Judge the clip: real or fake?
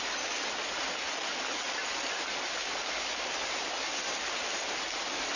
real